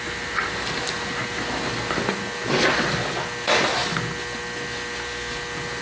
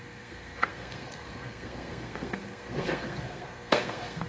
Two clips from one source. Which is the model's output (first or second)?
second